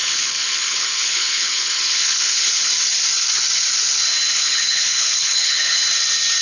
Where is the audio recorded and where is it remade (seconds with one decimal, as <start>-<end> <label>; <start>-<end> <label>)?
0.0-2.7 remade; 2.7-4.3 recorded; 4.3-5.8 remade; 5.8-6.4 recorded